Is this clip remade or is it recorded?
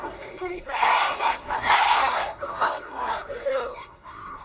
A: remade